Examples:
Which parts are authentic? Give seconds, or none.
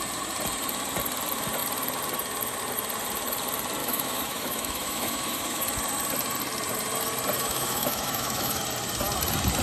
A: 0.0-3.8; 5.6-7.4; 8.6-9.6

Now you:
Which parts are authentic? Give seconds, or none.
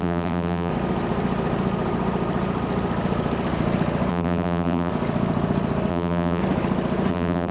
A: 0.7-4.1; 4.9-5.9; 6.4-7.1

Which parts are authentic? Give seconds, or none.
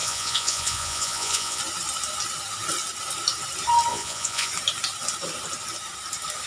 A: 1.6-3.9; 4.5-6.5